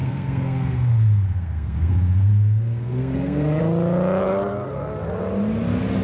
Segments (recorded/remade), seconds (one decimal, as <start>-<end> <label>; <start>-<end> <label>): 0.0-3.6 remade; 3.6-4.2 recorded; 4.2-5.2 remade; 5.2-6.0 recorded